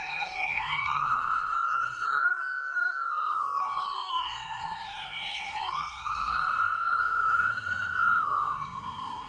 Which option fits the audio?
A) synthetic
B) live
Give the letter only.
A